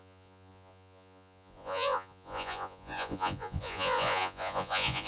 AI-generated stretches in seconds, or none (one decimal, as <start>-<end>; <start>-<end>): 0.0-5.1